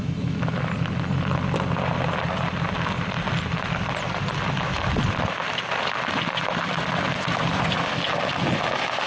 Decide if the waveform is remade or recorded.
recorded